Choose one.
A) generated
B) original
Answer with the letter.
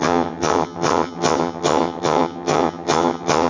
A